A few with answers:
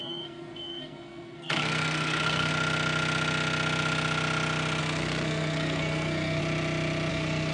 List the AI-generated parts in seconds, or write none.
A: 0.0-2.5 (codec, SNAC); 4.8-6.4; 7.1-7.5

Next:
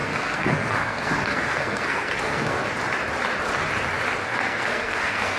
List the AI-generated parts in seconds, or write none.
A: 0.0-2.7 (codec, SNAC); 4.2-5.4

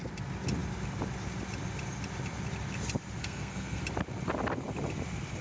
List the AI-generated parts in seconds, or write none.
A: 3.2-3.8 (codec, SNAC)

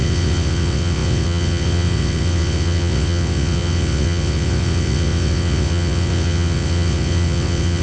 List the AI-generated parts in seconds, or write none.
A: 0.0-7.8 (vocoder, WaveNeXt)

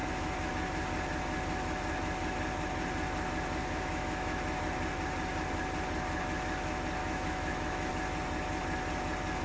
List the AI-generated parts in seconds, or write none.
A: 0.0-0.5 (autoencoder, DAC-VAE); 3.6-4.6; 7.0-7.9